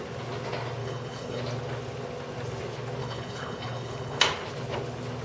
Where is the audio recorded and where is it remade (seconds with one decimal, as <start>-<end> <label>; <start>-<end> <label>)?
0.0-0.8 recorded; 0.8-1.4 remade; 1.4-3.0 recorded; 3.0-4.2 remade; 4.2-5.2 recorded